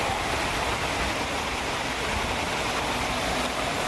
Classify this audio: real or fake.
real